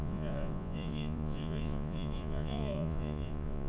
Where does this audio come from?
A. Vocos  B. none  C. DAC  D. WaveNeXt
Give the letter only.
A